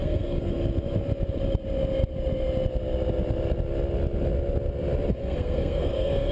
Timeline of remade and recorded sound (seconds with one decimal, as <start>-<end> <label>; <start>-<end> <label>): 0.0-0.5 remade; 0.5-5.2 recorded; 5.2-6.3 remade